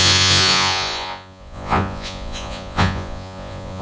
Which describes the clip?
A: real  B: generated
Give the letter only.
B